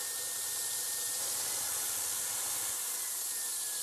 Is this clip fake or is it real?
real